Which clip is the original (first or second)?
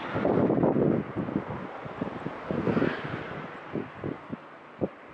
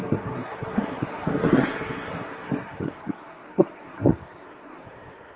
first